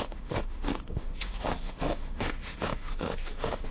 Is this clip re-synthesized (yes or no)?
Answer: yes